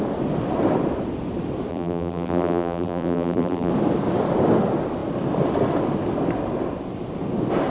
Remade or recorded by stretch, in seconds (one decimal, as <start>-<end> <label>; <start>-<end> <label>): 0.0-1.7 recorded; 1.7-3.7 remade; 3.7-7.7 recorded

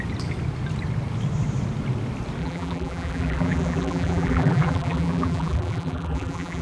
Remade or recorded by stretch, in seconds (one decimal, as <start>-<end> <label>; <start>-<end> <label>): 0.0-2.4 recorded; 2.4-6.6 remade

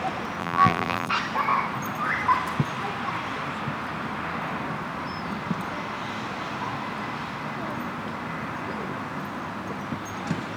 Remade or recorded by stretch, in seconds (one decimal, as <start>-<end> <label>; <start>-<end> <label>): 0.0-0.4 recorded; 0.4-1.1 remade; 1.1-10.6 recorded

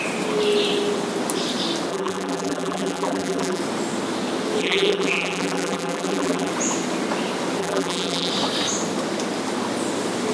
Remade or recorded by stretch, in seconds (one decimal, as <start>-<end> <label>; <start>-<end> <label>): 0.0-1.9 recorded; 1.9-3.6 remade; 3.6-4.6 recorded; 4.6-6.5 remade; 6.5-7.6 recorded; 7.6-8.3 remade; 8.3-10.3 recorded

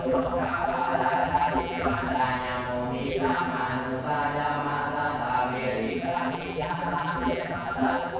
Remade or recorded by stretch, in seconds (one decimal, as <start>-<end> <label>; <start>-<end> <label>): 0.0-2.2 remade; 2.2-3.1 recorded; 3.1-3.6 remade; 3.6-5.9 recorded; 5.9-8.2 remade

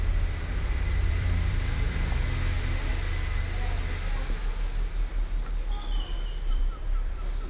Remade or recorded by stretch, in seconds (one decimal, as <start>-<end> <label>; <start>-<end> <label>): 0.0-2.9 remade; 2.9-6.5 recorded; 6.5-7.5 remade